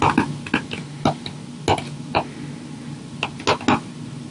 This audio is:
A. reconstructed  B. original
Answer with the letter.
B